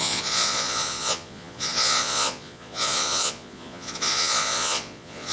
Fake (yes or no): yes